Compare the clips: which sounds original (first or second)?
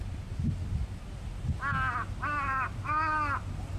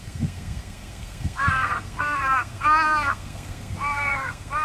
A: first